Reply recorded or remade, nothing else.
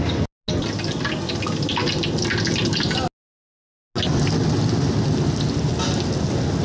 recorded